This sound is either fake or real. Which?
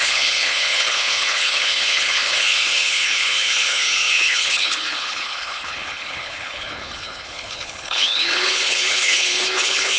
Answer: fake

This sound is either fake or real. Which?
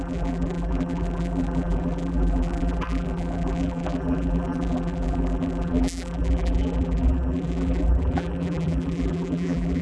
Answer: fake